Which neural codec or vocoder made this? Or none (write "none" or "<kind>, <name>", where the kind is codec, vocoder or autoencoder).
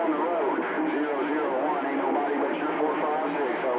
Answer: none